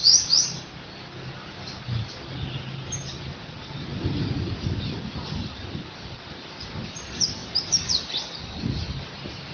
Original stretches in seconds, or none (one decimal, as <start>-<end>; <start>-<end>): 0.0-9.5